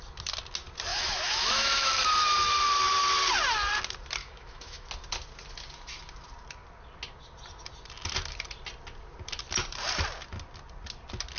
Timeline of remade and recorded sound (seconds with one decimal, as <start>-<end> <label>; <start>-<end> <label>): 0.0-0.9 recorded; 0.9-1.9 remade; 1.9-4.2 recorded; 4.2-4.9 remade; 4.9-11.4 recorded